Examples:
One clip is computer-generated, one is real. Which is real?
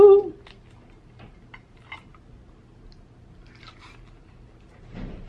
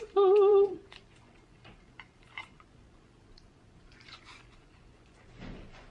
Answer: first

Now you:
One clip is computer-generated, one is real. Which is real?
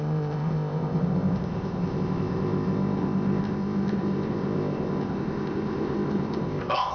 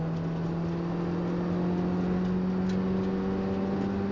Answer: second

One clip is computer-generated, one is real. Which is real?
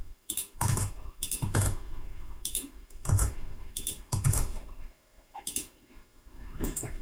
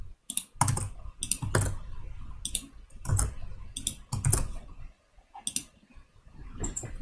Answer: second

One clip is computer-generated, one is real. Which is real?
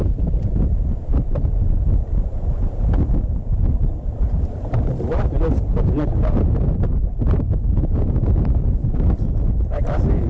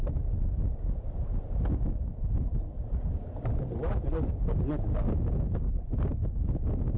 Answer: second